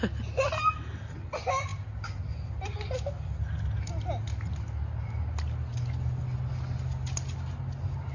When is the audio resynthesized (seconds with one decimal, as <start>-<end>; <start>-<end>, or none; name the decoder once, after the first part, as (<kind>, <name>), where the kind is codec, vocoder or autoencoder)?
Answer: none